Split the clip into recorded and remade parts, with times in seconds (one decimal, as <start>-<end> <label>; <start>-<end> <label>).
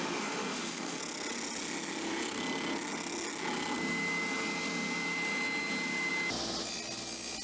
0.0-1.0 remade; 1.0-7.4 recorded